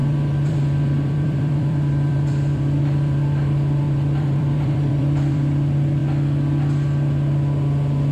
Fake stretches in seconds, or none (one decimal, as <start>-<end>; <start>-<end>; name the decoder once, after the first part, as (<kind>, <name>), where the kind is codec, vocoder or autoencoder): 0.0-6.0 (vocoder, BigVGAN v2)

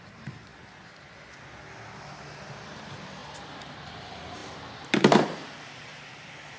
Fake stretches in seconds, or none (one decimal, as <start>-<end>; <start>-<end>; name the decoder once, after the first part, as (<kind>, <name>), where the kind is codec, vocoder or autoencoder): 0.0-0.5 (vocoder, BigVGAN v2); 2.5-4.4; 5.0-5.9

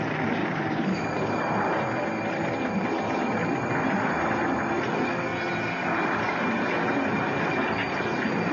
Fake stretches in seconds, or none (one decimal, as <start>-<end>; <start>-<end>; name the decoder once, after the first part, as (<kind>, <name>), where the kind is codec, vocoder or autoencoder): 0.4-1.7 (vocoder, BigVGAN v2)